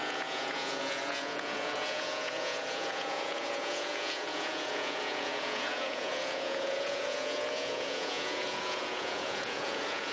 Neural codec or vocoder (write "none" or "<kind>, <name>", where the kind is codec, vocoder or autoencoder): vocoder, Vocos